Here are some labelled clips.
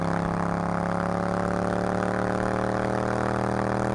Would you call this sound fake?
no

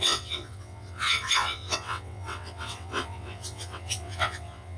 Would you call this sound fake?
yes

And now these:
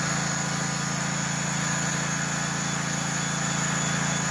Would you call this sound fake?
no